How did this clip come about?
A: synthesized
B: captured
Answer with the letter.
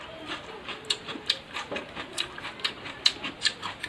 A